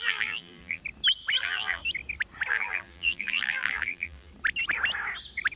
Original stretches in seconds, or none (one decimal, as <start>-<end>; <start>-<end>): 0.8-1.4; 1.8-2.5; 4.3-5.6